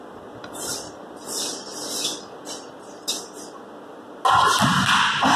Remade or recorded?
recorded